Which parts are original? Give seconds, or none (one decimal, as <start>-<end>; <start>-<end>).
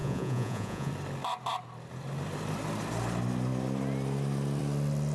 0.9-5.1